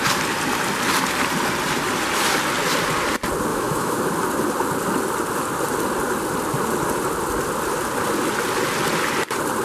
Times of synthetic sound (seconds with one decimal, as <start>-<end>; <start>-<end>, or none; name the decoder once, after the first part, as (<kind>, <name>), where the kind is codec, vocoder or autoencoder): 3.5-4.0 (autoencoder, DAC-VAE)